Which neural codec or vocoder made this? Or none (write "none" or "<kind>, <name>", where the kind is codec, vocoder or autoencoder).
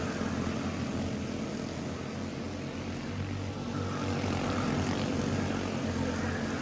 none